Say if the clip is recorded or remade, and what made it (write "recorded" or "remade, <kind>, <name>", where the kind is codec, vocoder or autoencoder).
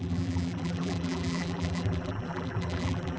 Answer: remade, vocoder, BigVGAN v2